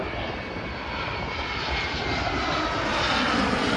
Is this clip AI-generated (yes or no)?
no